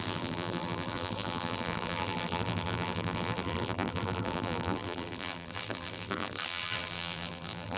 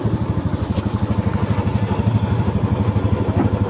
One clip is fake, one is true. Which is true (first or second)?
second